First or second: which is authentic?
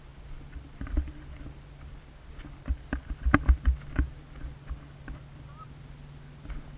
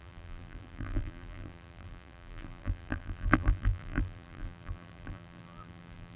first